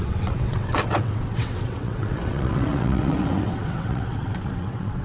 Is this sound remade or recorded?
remade